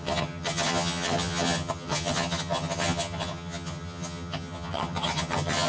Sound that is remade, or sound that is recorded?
remade